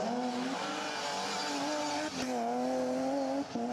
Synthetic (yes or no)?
no